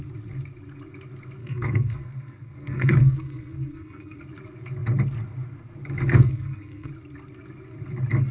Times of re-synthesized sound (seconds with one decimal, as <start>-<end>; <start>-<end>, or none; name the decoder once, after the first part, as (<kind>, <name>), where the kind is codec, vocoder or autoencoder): 1.4-4.2 (codec, SNAC); 6.1-6.9